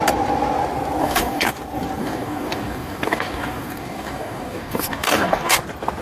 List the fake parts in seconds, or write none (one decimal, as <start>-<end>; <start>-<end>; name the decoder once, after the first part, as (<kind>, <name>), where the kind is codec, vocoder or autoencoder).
1.0-1.5 (codec, DAC); 2.0-5.6

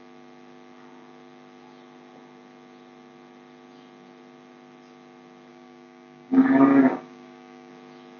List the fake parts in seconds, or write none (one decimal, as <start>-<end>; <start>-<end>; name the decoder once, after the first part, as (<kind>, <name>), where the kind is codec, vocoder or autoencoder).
5.5-7.7 (codec, DAC)

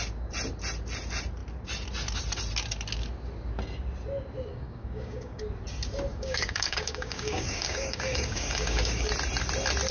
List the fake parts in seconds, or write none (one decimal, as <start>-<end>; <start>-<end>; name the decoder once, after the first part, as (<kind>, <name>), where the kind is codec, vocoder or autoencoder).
4.5-5.4 (codec, DAC); 6.1-9.1

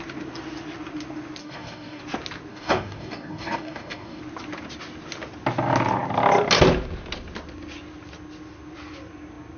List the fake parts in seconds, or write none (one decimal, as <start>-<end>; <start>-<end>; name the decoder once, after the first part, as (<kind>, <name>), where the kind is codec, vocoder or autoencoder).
1.4-2.0 (codec, DAC); 2.5-4.2

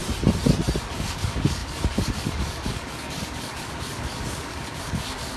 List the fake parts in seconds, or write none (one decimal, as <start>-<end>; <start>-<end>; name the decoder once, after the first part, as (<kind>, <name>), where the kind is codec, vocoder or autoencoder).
0.8-5.4 (codec, DAC)